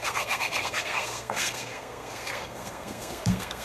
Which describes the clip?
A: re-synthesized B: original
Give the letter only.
A